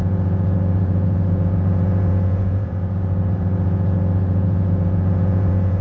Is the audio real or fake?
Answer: fake